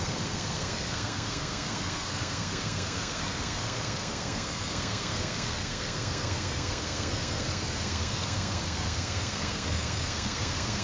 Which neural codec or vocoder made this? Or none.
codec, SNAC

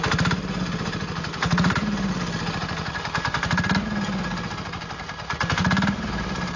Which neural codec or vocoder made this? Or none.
none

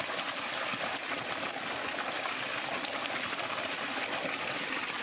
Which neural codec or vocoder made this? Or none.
none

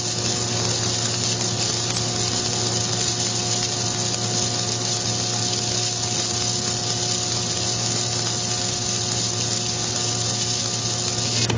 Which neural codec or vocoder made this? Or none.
none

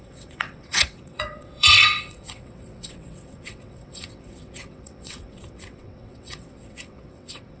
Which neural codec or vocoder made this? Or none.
vocoder, WaveNeXt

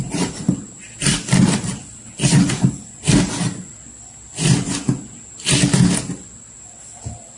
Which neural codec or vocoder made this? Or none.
none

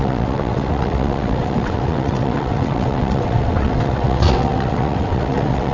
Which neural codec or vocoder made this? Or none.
vocoder, WaveNeXt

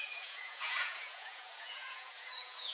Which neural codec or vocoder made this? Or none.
vocoder, Vocos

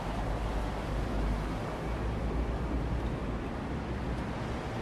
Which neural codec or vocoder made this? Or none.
none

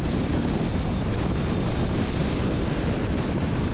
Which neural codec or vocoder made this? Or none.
none